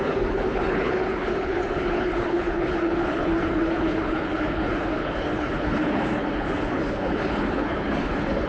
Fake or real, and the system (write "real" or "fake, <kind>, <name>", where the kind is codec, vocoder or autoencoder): fake, codec, HILCodec